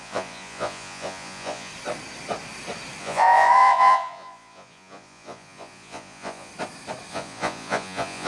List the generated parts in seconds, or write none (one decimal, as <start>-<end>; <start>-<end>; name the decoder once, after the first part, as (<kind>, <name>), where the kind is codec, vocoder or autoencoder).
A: 0.0-1.7 (vocoder, Vocos); 3.0-6.5; 7.1-8.3